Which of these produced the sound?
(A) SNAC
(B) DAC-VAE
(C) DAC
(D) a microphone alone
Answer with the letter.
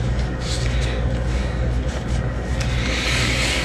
C